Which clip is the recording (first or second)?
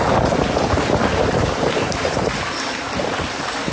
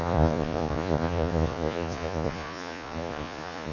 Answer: first